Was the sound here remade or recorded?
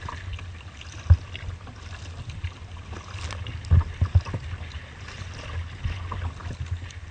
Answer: recorded